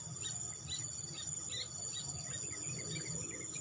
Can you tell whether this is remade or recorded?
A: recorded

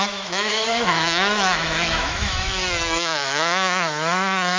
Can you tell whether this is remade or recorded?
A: remade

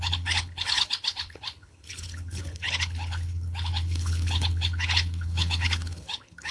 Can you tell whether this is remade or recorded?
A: remade